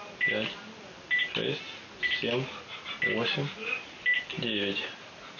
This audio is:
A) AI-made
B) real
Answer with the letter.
B